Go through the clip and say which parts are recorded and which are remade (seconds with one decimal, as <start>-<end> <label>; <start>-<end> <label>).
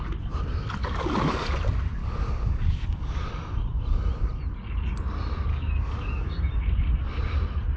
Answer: 0.0-0.8 recorded; 0.8-1.5 remade; 1.5-2.0 recorded; 2.0-3.3 remade; 3.3-5.5 recorded; 5.5-6.3 remade; 6.3-7.8 recorded